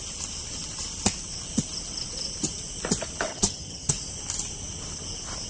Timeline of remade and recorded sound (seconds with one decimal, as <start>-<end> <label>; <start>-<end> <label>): 0.0-3.3 recorded; 3.3-3.9 remade; 3.9-5.5 recorded